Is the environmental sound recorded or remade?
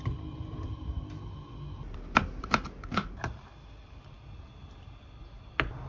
recorded